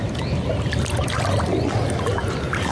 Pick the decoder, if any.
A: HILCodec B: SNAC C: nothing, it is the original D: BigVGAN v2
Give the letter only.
C